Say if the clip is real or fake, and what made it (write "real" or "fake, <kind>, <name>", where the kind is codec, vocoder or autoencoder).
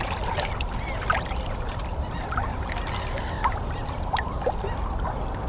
real